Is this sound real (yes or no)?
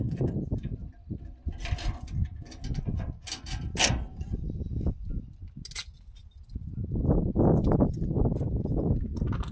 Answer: yes